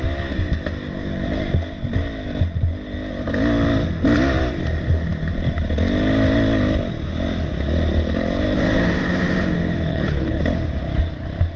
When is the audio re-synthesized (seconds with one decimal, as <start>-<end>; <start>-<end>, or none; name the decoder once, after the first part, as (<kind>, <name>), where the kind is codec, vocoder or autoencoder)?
9.9-10.4 (codec, HILCodec)